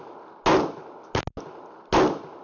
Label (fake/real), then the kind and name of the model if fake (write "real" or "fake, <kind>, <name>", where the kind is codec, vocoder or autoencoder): real